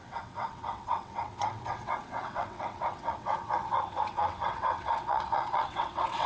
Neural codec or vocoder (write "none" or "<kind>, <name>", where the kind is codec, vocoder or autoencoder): vocoder, WaveNeXt